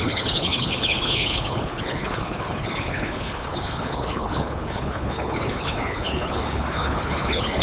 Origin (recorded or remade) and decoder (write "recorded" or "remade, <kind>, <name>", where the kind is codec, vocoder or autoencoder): remade, codec, HILCodec